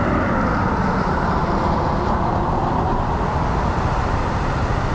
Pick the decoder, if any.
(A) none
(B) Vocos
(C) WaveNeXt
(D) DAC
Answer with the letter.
A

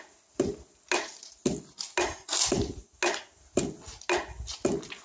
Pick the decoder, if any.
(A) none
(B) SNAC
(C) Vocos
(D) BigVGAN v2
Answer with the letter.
A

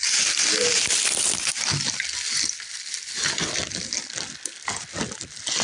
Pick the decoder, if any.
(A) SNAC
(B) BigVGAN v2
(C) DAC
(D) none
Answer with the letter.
D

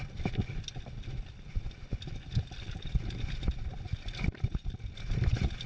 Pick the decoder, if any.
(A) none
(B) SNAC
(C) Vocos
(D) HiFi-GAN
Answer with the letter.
A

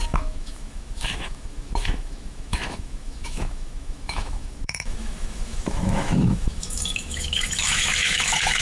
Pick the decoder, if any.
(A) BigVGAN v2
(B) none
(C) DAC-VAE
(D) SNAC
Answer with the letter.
C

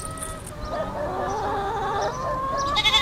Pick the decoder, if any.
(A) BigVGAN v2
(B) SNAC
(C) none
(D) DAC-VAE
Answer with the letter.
C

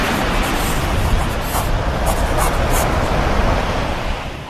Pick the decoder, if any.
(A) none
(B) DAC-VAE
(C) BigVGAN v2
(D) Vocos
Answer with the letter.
A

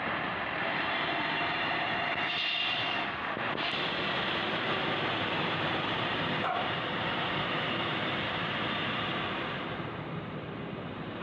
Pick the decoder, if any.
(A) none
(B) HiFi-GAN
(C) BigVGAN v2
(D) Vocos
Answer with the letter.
C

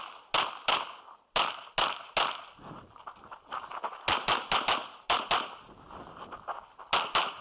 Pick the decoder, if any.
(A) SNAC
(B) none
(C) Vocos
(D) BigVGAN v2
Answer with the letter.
B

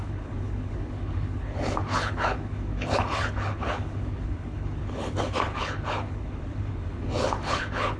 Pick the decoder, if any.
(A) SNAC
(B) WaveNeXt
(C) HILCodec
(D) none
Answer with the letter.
C